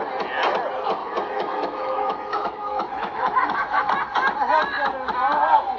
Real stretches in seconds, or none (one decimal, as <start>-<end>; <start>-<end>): 0.0-1.0; 3.9-5.8